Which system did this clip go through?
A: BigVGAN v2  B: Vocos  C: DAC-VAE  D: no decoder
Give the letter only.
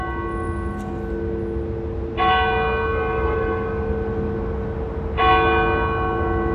D